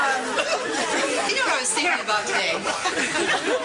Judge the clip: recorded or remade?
recorded